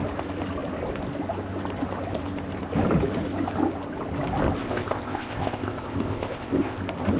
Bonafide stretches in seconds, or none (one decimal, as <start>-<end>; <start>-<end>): 0.0-4.6; 6.8-7.2

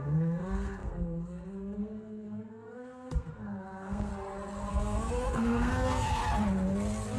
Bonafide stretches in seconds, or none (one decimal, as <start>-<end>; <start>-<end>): 4.1-4.7; 6.2-7.2